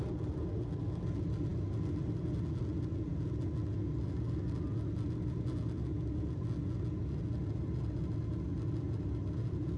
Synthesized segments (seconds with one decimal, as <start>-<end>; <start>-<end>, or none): none